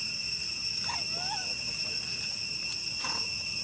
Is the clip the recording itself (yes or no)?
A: yes